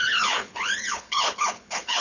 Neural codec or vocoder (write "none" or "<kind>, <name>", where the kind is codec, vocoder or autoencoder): codec, HILCodec